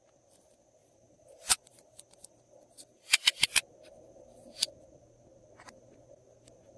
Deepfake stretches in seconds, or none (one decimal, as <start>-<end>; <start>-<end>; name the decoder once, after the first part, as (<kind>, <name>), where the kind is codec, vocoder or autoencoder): 0.8-3.1 (vocoder, BigVGAN v2)